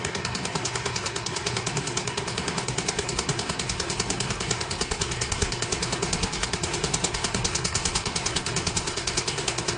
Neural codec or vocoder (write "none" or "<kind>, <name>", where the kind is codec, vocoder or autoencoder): codec, SNAC